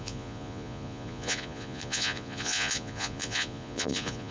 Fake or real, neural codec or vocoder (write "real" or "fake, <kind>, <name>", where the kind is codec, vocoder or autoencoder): fake, vocoder, Vocos